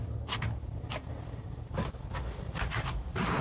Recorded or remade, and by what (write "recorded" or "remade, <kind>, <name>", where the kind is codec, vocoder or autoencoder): recorded